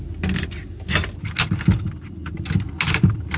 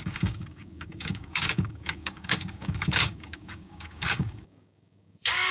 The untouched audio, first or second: first